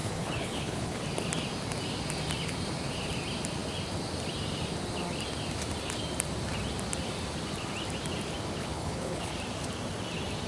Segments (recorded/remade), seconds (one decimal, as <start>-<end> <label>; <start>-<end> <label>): 0.0-1.0 remade; 1.0-8.6 recorded; 8.6-9.3 remade; 9.3-10.5 recorded